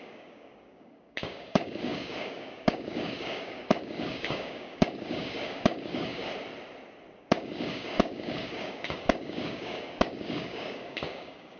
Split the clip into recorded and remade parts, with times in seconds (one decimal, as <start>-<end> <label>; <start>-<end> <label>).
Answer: 0.0-6.2 remade; 6.2-7.2 recorded; 7.2-11.6 remade